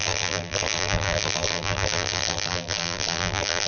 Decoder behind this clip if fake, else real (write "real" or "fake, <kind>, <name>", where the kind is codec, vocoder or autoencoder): fake, vocoder, BigVGAN v2